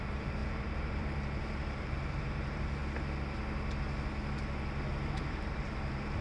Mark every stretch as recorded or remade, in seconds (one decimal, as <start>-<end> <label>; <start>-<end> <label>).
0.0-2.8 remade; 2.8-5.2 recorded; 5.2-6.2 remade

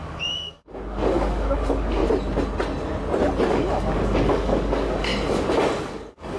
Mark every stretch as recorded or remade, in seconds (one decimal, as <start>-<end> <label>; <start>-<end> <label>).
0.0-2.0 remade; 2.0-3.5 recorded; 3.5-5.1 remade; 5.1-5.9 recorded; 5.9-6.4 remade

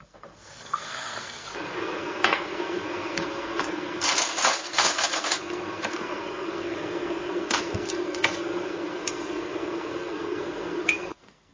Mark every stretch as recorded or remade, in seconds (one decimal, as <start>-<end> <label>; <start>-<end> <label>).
0.0-11.5 remade

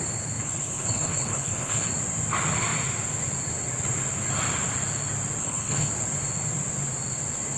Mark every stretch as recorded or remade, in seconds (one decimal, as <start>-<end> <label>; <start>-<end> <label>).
0.0-0.4 recorded; 0.4-1.9 remade; 1.9-5.4 recorded; 5.4-5.9 remade; 5.9-7.6 recorded

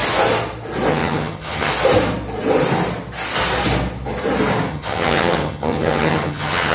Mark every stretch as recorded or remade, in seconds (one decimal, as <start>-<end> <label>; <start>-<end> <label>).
0.0-0.9 recorded; 0.9-1.7 remade; 1.7-4.7 recorded; 4.7-6.7 remade

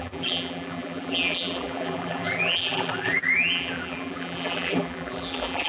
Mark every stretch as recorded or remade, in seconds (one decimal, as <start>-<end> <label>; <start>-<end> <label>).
0.0-5.7 remade

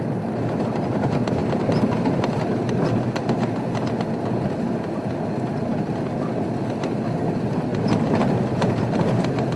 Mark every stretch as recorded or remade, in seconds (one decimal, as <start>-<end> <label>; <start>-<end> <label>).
0.0-9.6 recorded

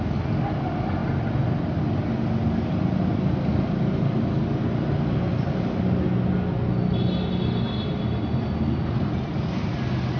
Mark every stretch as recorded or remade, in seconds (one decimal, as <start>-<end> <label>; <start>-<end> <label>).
0.0-10.2 recorded